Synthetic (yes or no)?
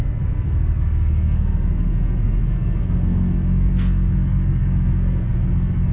yes